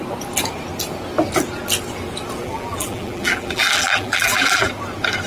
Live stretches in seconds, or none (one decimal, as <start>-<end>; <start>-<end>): 0.0-2.4; 4.7-5.3